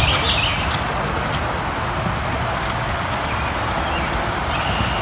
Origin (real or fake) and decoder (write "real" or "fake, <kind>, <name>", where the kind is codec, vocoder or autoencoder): real